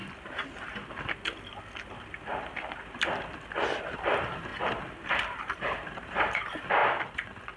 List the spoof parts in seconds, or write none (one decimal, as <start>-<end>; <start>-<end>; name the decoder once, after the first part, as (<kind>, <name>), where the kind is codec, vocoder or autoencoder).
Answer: 3.8-4.5 (vocoder, BigVGAN v2); 5.1-6.8